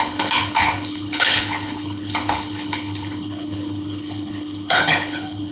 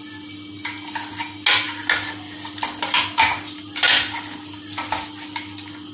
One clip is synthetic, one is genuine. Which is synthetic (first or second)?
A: first